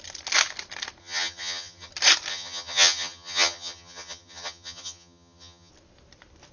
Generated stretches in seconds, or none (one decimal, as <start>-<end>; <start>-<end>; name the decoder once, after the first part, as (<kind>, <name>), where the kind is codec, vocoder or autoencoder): 1.0-1.9 (vocoder, HiFi-GAN); 2.3-5.7